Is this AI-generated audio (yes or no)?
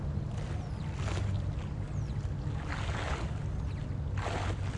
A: no